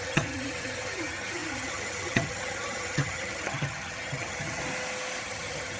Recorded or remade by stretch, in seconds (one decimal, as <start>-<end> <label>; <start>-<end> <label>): 0.0-4.6 remade; 4.6-5.2 recorded; 5.2-5.8 remade